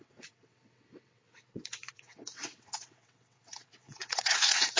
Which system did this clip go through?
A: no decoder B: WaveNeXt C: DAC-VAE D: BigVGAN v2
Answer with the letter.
B